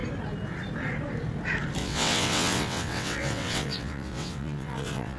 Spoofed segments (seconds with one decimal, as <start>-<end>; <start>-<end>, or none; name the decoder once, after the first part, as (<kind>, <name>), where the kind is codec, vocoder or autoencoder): 1.8-5.2 (vocoder, WaveNeXt)